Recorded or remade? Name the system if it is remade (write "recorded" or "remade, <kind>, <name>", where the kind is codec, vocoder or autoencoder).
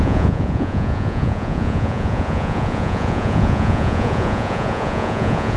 remade, vocoder, Vocos